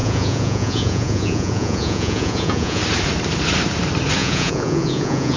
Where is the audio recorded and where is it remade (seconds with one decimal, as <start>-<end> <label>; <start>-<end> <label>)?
0.0-2.8 remade; 2.8-4.2 recorded; 4.2-5.4 remade